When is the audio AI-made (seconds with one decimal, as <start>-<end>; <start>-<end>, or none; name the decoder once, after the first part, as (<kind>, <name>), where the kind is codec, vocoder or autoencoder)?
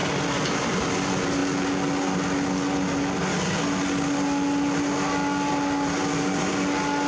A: none